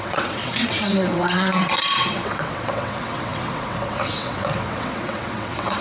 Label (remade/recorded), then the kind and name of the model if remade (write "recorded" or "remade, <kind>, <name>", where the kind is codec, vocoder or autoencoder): remade, vocoder, WaveNeXt